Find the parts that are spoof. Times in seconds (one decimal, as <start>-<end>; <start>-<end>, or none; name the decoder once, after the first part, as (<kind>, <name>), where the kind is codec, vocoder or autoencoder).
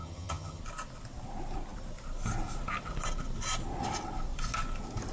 0.0-0.6 (vocoder, HiFi-GAN)